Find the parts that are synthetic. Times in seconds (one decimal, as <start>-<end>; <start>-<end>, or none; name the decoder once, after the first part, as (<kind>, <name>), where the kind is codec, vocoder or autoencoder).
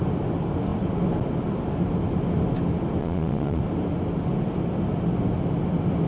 3.0-3.6 (vocoder, Vocos)